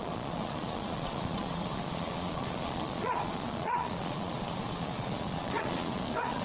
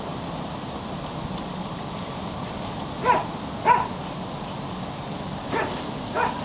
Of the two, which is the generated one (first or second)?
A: first